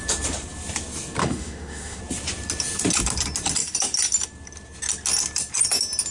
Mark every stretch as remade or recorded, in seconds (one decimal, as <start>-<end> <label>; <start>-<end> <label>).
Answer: 0.0-1.2 recorded; 1.2-2.0 remade; 2.0-6.1 recorded